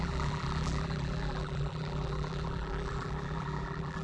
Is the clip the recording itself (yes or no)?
no